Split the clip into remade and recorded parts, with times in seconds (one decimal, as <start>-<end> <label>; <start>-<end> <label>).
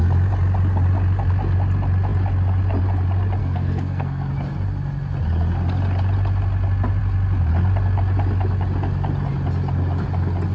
0.0-3.4 recorded; 3.4-4.3 remade; 4.3-10.5 recorded